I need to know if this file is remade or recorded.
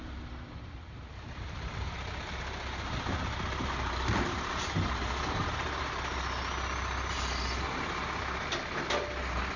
recorded